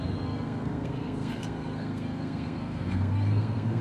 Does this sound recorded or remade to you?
remade